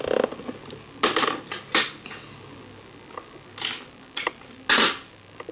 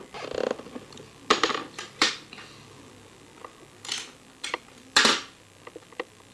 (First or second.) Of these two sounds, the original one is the first